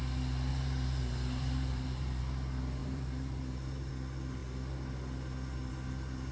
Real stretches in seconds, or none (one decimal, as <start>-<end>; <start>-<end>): 0.0-0.5; 2.2-2.8; 3.9-6.3